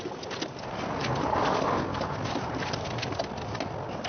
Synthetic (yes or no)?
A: no